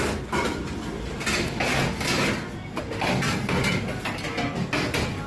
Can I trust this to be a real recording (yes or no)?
yes